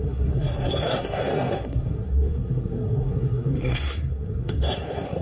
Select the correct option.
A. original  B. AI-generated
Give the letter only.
B